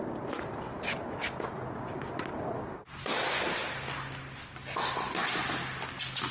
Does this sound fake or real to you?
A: real